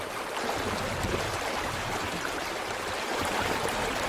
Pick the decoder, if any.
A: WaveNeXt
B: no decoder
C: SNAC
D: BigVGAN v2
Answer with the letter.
D